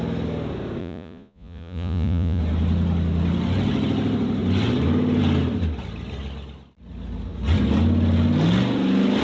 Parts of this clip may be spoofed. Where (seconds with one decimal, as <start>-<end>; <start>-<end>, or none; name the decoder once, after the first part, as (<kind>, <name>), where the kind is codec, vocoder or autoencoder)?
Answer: 0.8-2.4 (vocoder, Vocos)

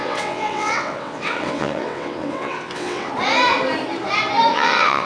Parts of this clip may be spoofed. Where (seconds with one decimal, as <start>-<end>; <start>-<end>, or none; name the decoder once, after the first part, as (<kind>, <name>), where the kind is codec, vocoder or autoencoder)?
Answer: 0.0-3.1 (vocoder, WaveNeXt); 4.5-5.1

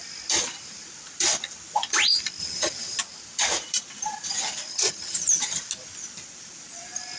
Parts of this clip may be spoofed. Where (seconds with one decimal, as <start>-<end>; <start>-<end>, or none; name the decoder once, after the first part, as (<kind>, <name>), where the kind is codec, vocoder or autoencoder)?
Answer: 2.4-3.0 (vocoder, HiFi-GAN); 4.7-5.6

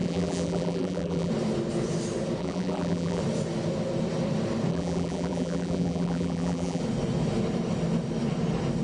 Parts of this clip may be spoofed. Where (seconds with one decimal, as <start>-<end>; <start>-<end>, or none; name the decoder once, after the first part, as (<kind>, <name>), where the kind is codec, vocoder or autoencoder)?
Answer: 0.0-1.3 (vocoder, BigVGAN v2); 2.4-3.2; 4.7-6.8